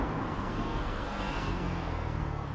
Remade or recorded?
remade